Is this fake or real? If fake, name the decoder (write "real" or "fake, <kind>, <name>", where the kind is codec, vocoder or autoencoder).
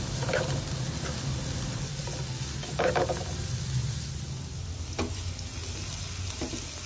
real